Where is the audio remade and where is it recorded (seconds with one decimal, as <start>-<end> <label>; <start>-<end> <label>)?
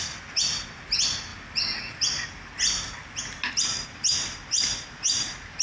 0.0-5.6 recorded